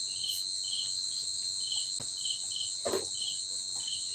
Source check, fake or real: real